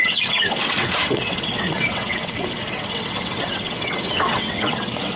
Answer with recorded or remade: remade